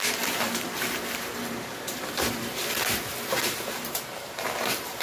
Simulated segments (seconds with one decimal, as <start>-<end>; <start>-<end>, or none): 0.0-2.6; 3.4-5.0